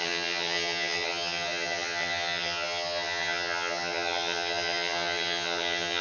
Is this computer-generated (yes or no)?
yes